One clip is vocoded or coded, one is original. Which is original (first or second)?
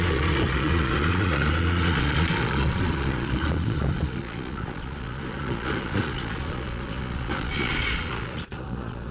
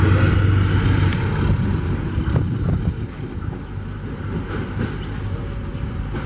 second